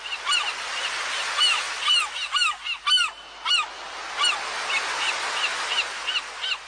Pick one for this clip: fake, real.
real